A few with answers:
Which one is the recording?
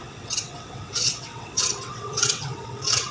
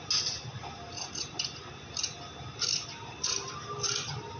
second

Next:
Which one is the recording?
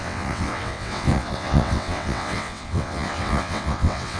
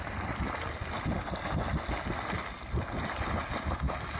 second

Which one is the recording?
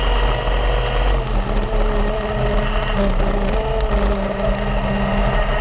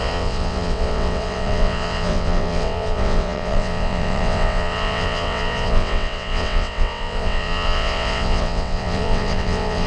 first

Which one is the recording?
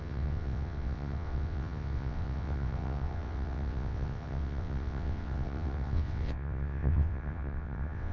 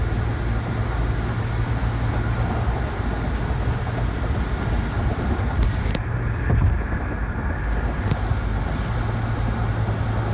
second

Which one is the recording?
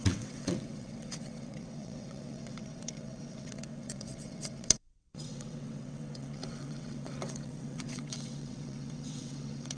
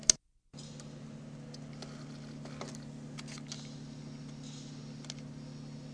second